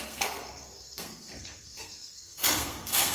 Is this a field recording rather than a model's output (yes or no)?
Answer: no